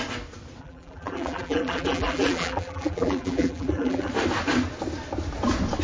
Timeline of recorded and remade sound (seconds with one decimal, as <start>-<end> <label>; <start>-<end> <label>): 0.0-0.6 recorded; 0.6-4.1 remade; 4.1-5.8 recorded